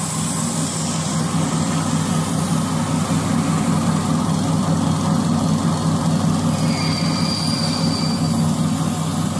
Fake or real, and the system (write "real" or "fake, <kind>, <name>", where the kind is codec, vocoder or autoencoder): real